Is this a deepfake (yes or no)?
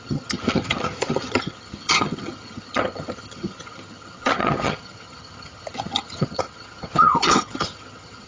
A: yes